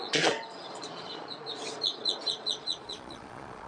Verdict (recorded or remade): remade